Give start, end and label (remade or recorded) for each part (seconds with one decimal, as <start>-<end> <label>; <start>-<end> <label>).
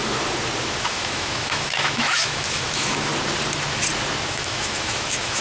0.0-0.8 recorded; 0.8-3.1 remade; 3.1-4.3 recorded; 4.3-5.4 remade